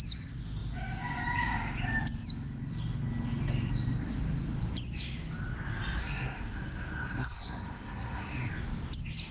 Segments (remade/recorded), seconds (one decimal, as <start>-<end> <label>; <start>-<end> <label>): 0.0-6.0 recorded; 6.0-8.5 remade; 8.5-9.3 recorded